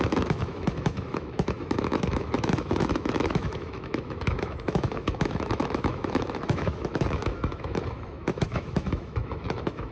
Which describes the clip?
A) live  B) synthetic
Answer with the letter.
B